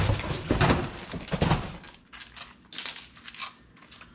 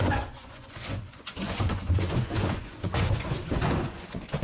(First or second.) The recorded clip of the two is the first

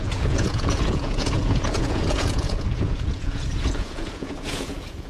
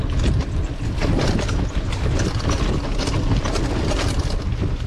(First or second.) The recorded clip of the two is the second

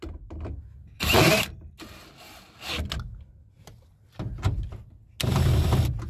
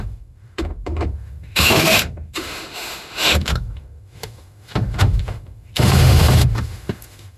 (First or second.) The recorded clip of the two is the first